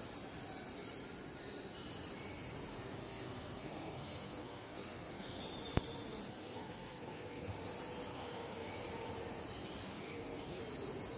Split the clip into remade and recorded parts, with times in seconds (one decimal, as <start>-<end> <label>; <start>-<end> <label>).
0.0-3.0 recorded; 3.0-5.4 remade; 5.4-6.3 recorded; 6.3-7.5 remade; 7.5-8.1 recorded; 8.1-8.7 remade; 8.7-9.9 recorded; 9.9-10.6 remade; 10.6-11.2 recorded